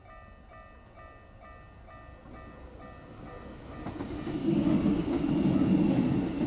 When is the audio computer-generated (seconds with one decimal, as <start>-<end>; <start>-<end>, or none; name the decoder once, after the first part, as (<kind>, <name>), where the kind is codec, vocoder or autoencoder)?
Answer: 4.4-5.3 (codec, DAC)